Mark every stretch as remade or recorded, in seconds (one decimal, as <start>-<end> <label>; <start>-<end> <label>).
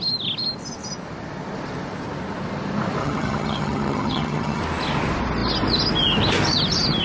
0.0-3.0 recorded; 3.0-4.6 remade; 4.6-7.0 recorded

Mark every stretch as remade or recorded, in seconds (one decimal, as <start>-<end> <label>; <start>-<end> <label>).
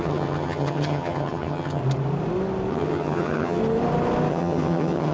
0.0-1.8 remade; 1.8-2.7 recorded; 2.7-3.6 remade; 3.6-4.3 recorded; 4.3-5.1 remade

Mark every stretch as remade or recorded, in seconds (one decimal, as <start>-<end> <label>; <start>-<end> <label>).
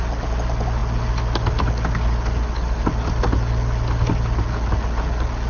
0.0-5.5 recorded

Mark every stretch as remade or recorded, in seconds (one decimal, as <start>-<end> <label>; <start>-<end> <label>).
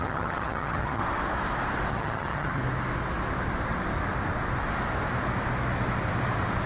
0.0-1.0 remade; 1.0-1.9 recorded; 1.9-2.6 remade; 2.6-6.7 recorded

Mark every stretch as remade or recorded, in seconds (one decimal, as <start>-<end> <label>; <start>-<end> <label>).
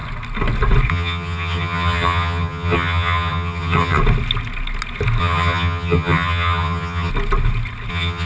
0.0-0.9 recorded; 0.9-4.0 remade; 4.0-5.2 recorded; 5.2-7.1 remade; 7.1-7.9 recorded; 7.9-8.3 remade